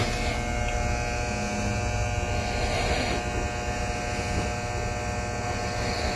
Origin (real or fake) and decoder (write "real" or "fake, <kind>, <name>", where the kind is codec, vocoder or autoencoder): real